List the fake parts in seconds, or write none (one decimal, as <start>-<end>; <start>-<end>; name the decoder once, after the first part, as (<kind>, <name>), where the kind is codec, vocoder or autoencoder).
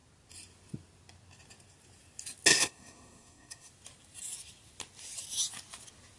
2.5-3.7 (codec, SNAC)